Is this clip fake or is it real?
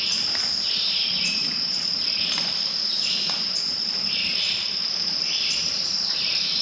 fake